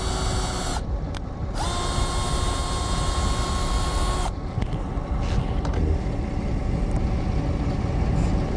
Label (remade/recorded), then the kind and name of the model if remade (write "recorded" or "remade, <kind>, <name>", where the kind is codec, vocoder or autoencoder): recorded